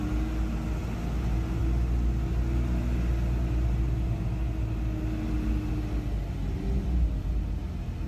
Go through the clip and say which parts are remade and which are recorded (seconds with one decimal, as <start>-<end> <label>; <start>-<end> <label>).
0.0-8.1 recorded